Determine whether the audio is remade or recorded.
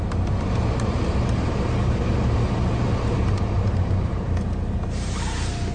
remade